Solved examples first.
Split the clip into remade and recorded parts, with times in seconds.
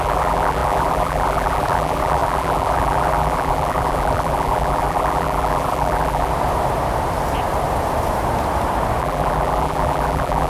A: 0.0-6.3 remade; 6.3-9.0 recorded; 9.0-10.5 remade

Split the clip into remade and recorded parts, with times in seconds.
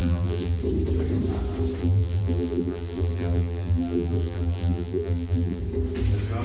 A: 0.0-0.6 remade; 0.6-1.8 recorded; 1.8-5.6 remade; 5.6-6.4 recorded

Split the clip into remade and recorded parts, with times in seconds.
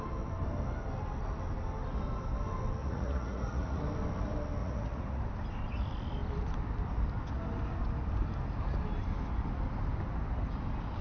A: 0.0-2.8 recorded; 2.8-3.8 remade; 3.8-4.6 recorded; 4.6-5.2 remade; 5.2-11.0 recorded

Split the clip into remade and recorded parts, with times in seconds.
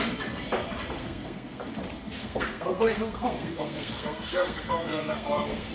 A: 0.0-1.0 recorded; 1.0-1.6 remade; 1.6-2.2 recorded; 2.2-5.7 remade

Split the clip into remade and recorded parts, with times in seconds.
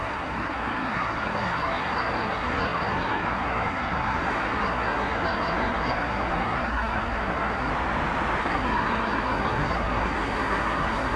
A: 0.0-7.7 remade; 7.7-8.4 recorded; 8.4-11.2 remade